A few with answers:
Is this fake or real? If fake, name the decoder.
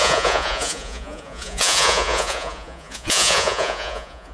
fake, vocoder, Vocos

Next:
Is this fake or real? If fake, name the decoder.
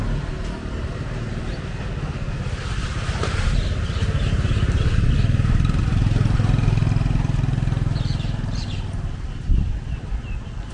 real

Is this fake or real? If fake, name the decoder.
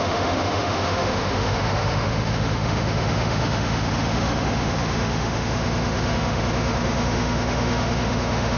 fake, autoencoder, DAC-VAE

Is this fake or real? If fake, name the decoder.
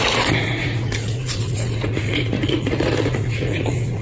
fake, vocoder, Vocos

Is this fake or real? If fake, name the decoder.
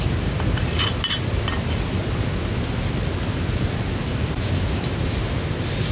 real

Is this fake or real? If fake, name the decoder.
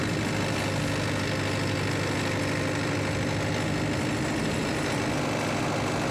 real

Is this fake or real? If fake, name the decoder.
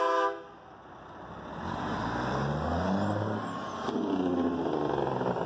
real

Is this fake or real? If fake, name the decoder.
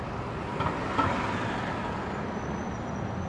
fake, vocoder, BigVGAN v2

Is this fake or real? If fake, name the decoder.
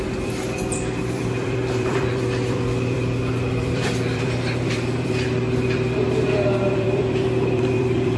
fake, vocoder, BigVGAN v2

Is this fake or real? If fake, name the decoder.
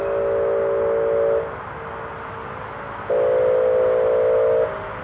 real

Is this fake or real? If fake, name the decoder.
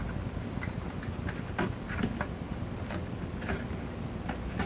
real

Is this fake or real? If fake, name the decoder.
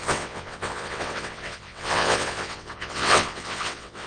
fake, vocoder, WaveNeXt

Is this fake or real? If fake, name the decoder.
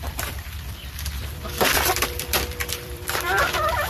fake, vocoder, BigVGAN v2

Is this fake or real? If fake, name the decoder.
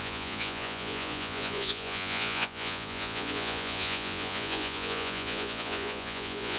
fake, vocoder, Vocos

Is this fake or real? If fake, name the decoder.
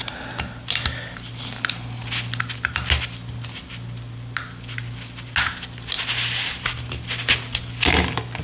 real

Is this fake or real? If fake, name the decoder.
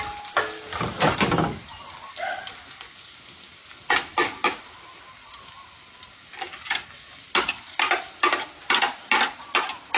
real